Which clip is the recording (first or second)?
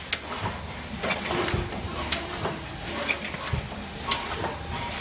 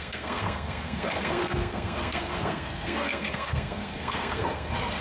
first